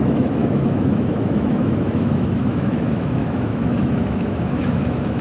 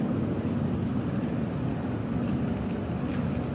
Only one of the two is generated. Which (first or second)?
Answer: first